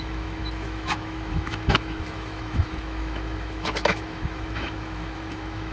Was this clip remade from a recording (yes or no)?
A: yes